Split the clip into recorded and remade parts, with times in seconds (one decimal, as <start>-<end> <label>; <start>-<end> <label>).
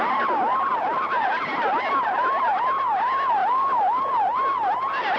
0.0-0.7 recorded; 0.7-2.8 remade; 2.8-5.2 recorded